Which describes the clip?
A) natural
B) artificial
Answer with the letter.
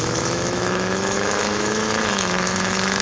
B